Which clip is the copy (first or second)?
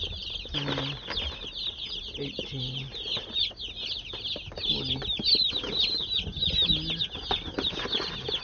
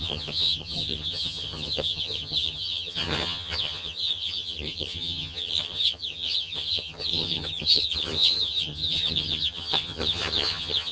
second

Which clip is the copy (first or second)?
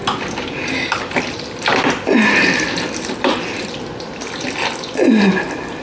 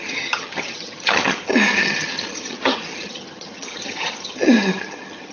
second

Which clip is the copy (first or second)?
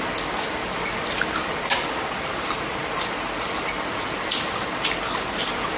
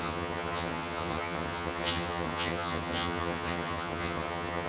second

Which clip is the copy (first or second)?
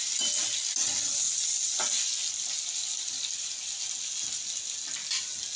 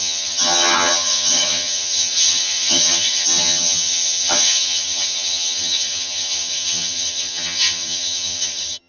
second